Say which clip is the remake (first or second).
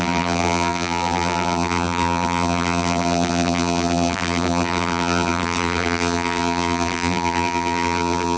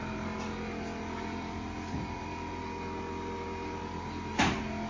first